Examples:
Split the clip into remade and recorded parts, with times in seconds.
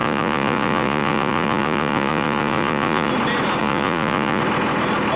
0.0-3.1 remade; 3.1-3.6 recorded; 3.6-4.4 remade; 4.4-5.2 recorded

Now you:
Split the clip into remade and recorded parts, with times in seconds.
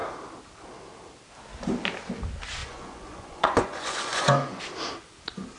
0.0-2.6 recorded; 2.6-4.6 remade; 4.6-5.6 recorded